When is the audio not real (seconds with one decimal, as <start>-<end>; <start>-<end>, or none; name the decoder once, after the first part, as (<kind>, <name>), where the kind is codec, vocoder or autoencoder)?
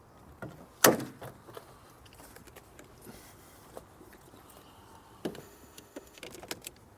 5.4-6.2 (autoencoder, DAC-VAE)